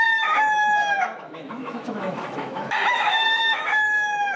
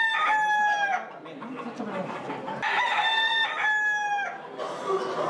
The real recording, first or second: second